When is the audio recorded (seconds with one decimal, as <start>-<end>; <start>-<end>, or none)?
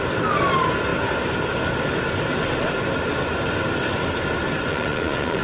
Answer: 0.0-4.7